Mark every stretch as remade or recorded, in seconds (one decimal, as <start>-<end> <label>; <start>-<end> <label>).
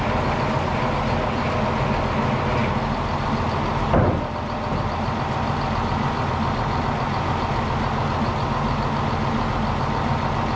0.0-10.6 recorded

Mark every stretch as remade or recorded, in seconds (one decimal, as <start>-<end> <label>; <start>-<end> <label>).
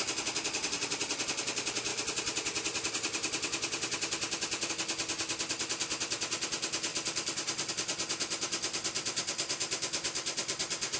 0.0-1.9 recorded; 1.9-4.7 remade; 4.7-6.9 recorded; 6.9-7.7 remade; 7.7-11.0 recorded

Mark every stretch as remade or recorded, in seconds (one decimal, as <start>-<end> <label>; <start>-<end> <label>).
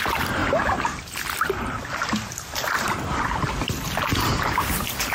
0.0-5.1 remade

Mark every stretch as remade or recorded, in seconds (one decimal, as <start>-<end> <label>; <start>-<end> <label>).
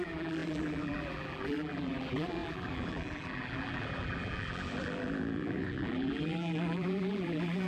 0.0-7.7 remade